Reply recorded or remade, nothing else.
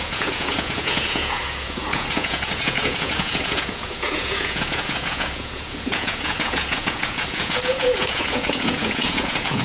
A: remade